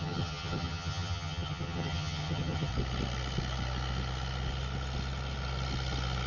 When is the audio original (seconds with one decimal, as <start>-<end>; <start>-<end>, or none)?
2.7-6.3